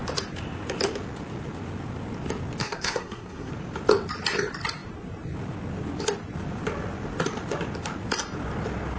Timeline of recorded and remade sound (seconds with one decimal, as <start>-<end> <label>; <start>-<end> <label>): 0.0-2.6 recorded; 2.6-3.5 remade; 3.5-9.0 recorded